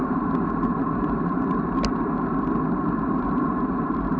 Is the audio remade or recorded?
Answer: remade